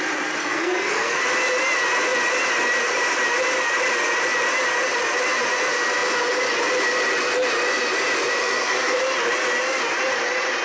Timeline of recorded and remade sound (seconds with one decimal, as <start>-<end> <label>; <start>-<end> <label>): 0.0-0.4 recorded; 0.4-1.2 remade; 1.2-8.4 recorded; 8.4-9.0 remade; 9.0-10.6 recorded